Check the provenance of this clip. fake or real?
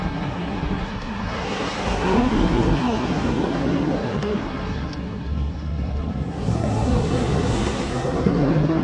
fake